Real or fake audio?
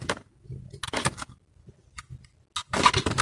real